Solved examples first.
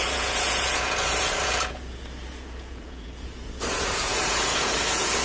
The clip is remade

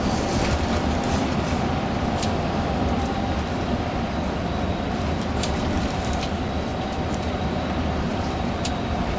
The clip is remade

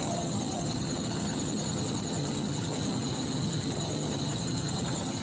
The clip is remade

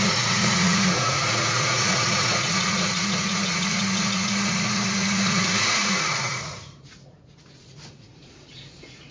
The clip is remade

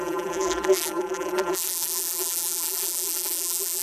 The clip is remade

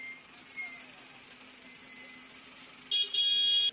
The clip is recorded